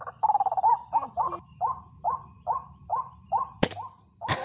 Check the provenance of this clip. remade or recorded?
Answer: recorded